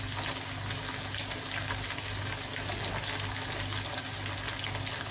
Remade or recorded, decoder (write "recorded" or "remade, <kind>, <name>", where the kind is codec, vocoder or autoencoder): recorded